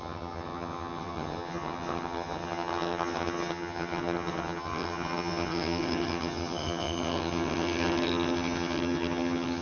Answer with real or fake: fake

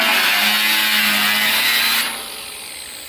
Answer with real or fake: real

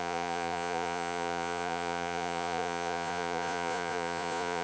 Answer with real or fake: fake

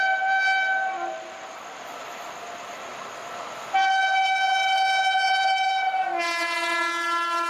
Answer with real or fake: real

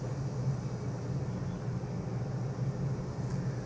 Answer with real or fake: real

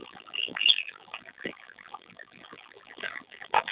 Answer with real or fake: fake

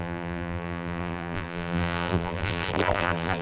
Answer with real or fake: fake